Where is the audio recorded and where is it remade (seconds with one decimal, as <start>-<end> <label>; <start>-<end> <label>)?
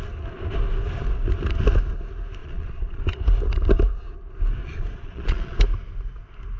0.0-2.4 recorded; 2.4-3.0 remade; 3.0-4.6 recorded; 4.6-5.6 remade; 5.6-6.6 recorded